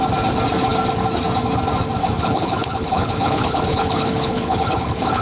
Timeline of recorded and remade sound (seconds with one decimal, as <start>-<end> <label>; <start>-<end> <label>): 0.0-2.0 recorded; 2.0-5.2 remade